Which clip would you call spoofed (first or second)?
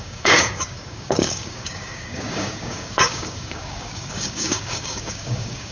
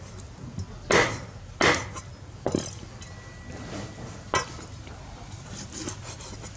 first